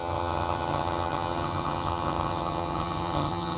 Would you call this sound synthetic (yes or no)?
yes